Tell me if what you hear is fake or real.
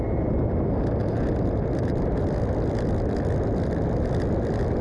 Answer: fake